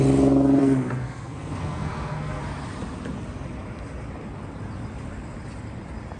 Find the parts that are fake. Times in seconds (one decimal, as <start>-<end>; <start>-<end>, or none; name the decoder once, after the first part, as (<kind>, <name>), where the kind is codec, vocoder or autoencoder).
0.6-2.4 (codec, SNAC)